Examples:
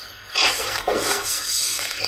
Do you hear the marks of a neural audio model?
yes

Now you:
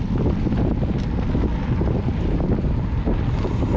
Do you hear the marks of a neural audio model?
no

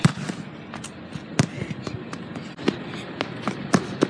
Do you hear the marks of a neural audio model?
no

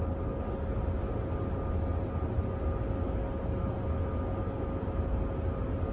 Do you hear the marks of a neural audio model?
no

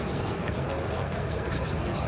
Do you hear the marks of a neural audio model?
yes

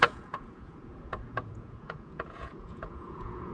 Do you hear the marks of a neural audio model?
yes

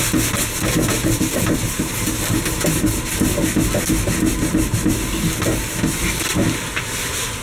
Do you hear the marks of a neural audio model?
no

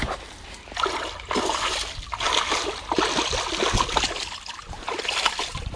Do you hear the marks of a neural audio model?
no